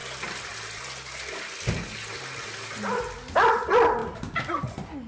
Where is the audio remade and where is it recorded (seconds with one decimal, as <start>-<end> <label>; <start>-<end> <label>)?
0.0-5.1 recorded